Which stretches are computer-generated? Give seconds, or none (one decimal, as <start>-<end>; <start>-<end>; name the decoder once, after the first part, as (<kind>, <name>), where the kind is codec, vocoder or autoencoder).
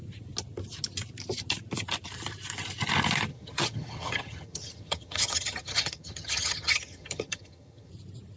3.3-7.9 (vocoder, HiFi-GAN)